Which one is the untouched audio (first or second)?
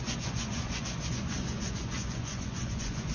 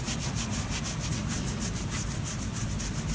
second